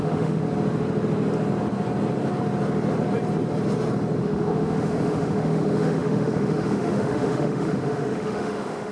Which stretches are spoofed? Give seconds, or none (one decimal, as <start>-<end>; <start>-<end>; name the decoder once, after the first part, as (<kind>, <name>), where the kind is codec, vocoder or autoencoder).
0.0-0.4 (autoencoder, DAC-VAE); 4.2-8.9